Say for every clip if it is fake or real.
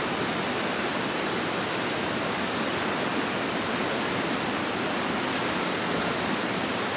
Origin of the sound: real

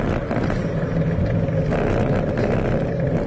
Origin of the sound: real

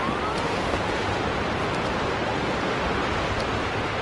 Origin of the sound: real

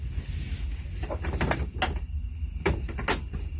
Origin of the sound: real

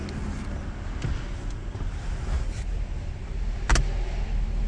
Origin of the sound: real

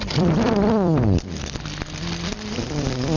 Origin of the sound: fake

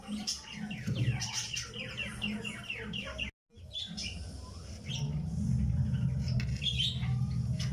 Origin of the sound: real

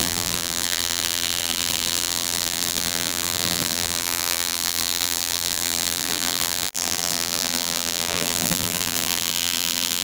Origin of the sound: fake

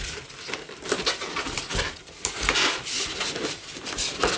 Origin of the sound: fake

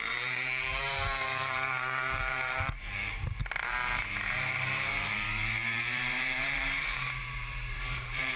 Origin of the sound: fake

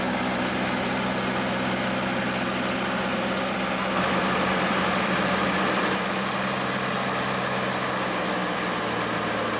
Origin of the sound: real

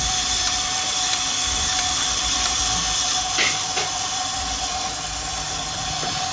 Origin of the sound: fake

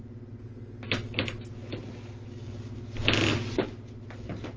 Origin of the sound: real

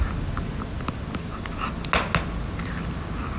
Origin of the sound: real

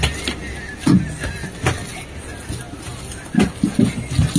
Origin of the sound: real